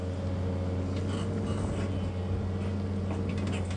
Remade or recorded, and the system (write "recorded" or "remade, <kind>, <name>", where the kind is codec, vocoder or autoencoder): recorded